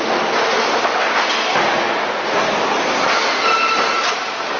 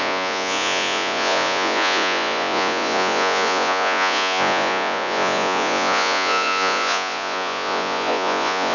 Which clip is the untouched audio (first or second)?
first